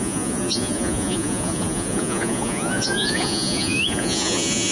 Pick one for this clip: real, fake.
fake